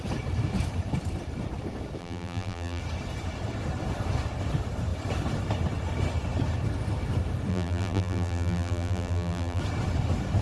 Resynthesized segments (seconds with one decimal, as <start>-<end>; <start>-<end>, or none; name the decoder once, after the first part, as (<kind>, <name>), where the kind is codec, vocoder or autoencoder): 2.0-2.8 (vocoder, BigVGAN v2); 7.5-9.6